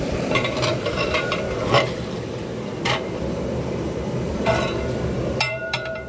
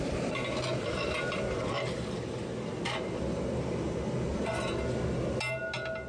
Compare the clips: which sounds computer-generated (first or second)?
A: first